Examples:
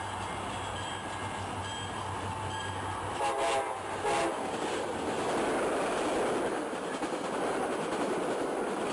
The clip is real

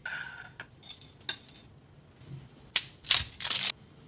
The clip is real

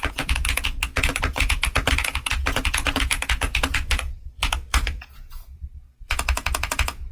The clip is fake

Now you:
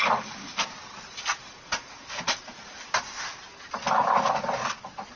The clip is real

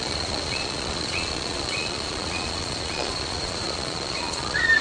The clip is fake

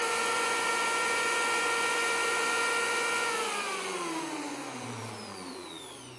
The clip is fake